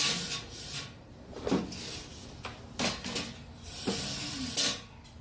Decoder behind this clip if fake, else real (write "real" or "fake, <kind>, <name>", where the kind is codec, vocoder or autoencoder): real